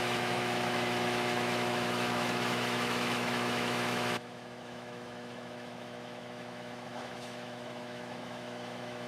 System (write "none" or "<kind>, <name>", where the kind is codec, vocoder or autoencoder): autoencoder, DAC-VAE